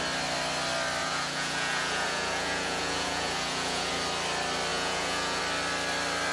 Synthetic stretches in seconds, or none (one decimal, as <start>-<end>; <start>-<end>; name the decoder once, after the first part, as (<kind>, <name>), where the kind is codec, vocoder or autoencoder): 1.0-3.9 (vocoder, Vocos); 4.7-5.4